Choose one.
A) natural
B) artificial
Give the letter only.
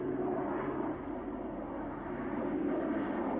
A